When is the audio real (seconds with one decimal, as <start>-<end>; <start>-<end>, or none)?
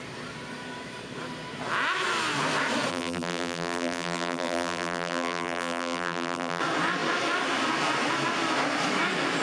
0.0-2.9; 6.6-9.4